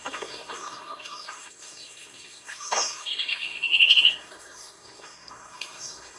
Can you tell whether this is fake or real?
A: fake